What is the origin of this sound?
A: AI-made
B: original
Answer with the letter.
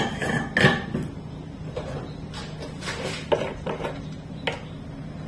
B